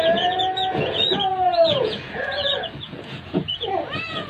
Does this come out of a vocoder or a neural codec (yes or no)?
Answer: yes